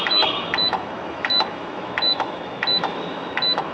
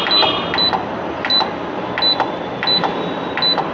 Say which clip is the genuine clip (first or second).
second